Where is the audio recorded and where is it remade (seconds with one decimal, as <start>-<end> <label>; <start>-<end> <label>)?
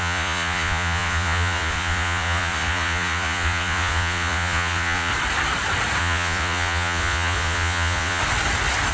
0.0-5.1 remade; 5.1-6.0 recorded; 6.0-8.2 remade; 8.2-8.9 recorded